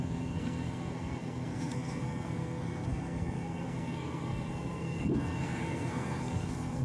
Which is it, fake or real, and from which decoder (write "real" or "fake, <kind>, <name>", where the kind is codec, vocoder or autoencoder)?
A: fake, codec, SNAC